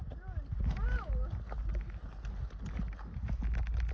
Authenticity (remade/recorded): recorded